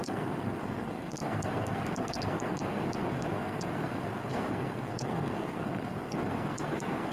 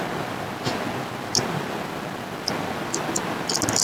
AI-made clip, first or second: first